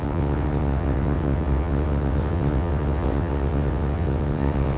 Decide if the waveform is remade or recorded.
remade